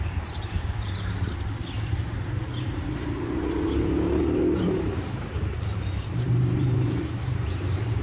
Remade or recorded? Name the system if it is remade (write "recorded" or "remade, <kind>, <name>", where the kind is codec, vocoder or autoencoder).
remade, vocoder, BigVGAN v2